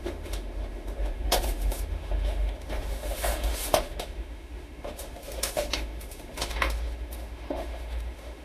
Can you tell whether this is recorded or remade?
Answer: remade